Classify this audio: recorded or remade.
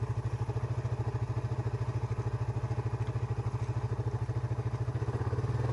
recorded